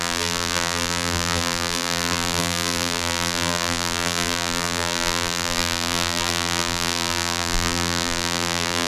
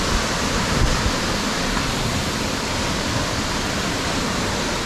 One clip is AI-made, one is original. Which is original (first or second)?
second